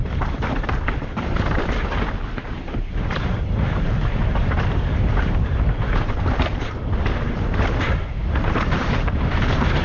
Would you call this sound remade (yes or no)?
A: yes